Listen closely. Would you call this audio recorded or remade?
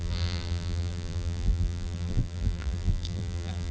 remade